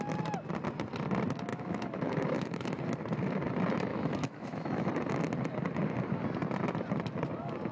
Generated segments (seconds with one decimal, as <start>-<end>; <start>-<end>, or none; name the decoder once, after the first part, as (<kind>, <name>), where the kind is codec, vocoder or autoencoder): 1.5-2.7 (autoencoder, DAC-VAE); 3.9-4.9